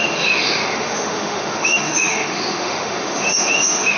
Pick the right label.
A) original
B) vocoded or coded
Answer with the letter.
B